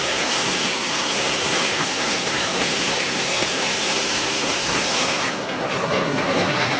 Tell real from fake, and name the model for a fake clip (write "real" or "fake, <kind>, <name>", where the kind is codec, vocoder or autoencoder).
fake, codec, SNAC